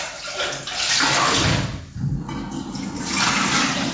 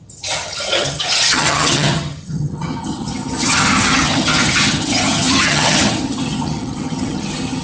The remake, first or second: second